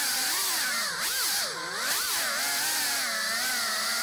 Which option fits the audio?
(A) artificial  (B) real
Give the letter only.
B